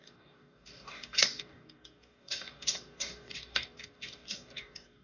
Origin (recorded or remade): remade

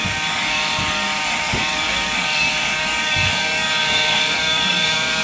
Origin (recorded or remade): remade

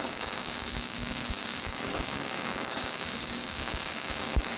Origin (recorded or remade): remade